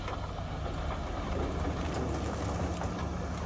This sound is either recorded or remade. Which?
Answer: recorded